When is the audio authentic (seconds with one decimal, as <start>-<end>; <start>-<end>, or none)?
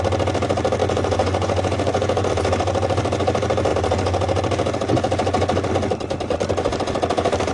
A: 0.0-0.8; 2.3-7.5